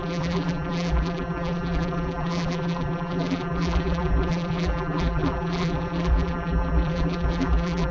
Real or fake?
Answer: fake